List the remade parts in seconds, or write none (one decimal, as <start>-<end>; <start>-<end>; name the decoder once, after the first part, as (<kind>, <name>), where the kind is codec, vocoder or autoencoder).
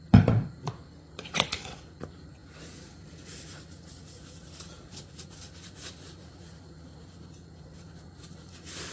0.0-8.9 (vocoder, Vocos)